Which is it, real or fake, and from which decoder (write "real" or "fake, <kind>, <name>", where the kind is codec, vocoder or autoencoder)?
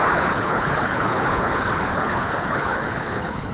fake, codec, HILCodec